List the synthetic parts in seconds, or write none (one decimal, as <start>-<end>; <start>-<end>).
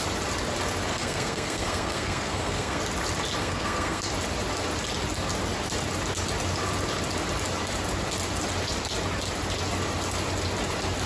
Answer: 0.9-2.8; 3.4-4.1